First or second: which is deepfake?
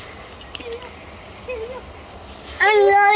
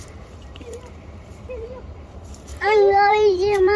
second